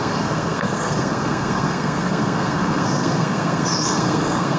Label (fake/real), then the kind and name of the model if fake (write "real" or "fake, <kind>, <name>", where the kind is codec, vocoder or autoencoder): fake, codec, SNAC